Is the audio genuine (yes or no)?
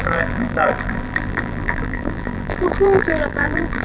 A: no